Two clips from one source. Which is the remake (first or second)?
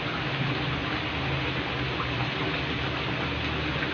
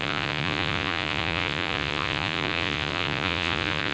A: second